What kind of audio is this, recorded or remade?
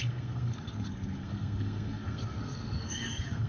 remade